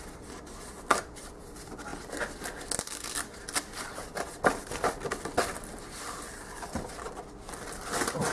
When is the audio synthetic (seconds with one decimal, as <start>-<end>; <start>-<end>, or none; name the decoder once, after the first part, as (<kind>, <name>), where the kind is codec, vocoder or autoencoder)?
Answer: none